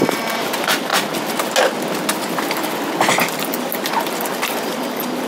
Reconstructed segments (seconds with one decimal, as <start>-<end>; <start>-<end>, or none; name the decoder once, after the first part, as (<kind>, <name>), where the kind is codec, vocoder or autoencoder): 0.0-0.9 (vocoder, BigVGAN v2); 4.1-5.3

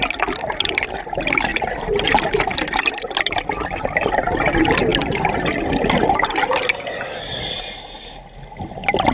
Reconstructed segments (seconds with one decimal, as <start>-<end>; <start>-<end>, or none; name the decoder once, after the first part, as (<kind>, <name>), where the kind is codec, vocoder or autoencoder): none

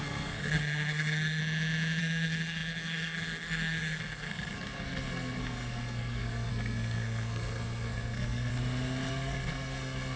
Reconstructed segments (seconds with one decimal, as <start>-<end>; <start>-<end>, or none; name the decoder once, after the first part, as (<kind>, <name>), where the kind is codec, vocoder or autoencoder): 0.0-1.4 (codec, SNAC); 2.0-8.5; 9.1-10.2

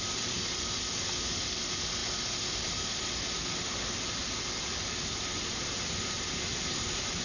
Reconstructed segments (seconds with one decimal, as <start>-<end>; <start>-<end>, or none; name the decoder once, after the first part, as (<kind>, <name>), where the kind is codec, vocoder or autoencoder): none